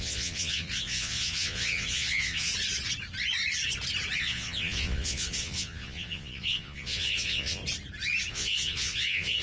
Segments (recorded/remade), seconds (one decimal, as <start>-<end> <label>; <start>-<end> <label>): 0.0-2.5 remade; 2.5-4.2 recorded; 4.2-7.6 remade; 7.6-8.3 recorded; 8.3-9.4 remade